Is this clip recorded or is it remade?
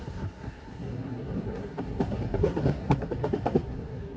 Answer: remade